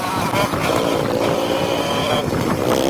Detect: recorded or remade recorded